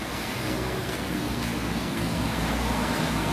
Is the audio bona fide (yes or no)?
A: no